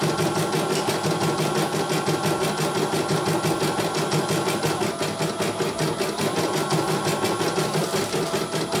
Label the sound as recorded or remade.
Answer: recorded